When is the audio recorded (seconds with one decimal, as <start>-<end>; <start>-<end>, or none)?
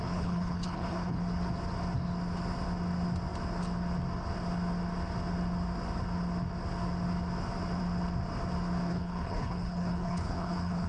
1.2-8.9